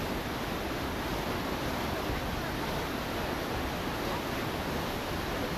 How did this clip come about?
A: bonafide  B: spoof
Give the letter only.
A